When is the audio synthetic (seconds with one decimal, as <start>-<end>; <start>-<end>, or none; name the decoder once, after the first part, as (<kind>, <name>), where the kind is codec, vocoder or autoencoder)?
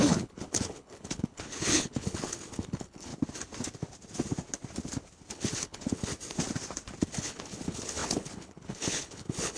0.0-3.1 (codec, HILCodec); 5.3-6.1; 7.1-9.6